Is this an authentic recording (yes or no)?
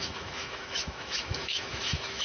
no